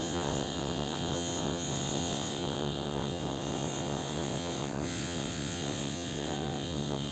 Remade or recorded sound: remade